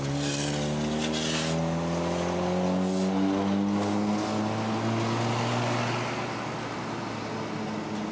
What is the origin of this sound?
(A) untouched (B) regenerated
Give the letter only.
A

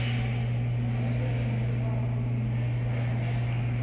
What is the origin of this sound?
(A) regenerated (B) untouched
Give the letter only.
B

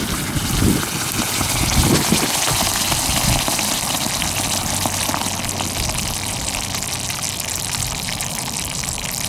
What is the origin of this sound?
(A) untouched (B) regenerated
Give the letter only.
A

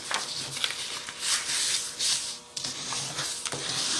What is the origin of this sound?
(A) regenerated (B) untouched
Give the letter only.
B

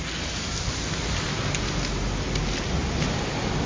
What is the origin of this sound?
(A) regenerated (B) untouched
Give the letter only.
B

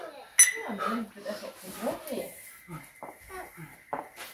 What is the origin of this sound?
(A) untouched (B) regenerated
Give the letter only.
A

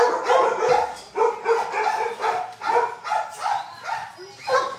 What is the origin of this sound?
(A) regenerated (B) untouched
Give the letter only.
B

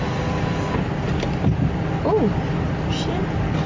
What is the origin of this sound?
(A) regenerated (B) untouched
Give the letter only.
B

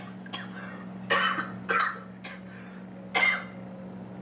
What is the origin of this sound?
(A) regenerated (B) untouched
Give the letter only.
B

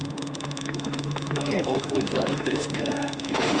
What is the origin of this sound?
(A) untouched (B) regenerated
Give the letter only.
B